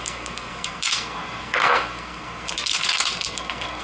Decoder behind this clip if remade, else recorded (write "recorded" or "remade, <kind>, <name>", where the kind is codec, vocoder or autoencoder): remade, codec, SNAC